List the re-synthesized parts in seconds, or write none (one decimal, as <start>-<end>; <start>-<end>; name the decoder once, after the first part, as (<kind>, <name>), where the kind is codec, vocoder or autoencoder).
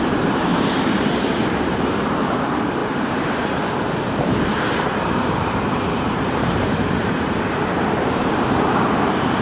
0.0-9.4 (vocoder, BigVGAN v2)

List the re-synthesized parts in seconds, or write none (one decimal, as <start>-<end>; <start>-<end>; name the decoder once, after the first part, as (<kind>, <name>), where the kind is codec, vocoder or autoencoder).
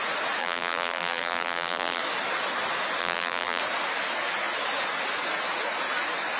0.4-2.0 (vocoder, BigVGAN v2); 3.0-3.6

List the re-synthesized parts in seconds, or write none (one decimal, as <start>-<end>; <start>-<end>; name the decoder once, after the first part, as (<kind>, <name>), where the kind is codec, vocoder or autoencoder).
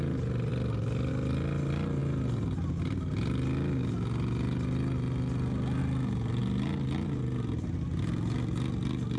none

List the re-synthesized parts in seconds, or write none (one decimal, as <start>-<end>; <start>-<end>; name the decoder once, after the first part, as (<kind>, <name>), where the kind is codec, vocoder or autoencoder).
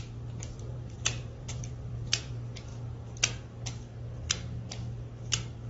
0.4-2.3 (vocoder, BigVGAN v2)